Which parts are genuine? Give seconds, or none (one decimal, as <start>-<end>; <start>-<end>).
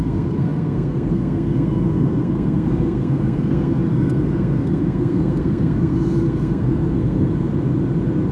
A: 7.5-8.3